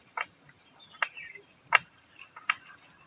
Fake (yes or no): yes